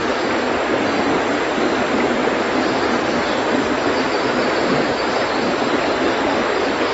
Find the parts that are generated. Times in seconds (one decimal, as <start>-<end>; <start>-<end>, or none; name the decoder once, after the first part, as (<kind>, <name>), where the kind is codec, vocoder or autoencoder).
0.0-0.7 (vocoder, BigVGAN v2)